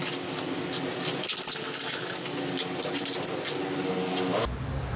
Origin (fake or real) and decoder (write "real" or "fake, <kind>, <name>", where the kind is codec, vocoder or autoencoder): real